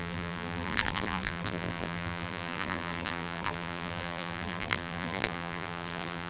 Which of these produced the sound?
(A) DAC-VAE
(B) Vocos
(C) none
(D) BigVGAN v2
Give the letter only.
D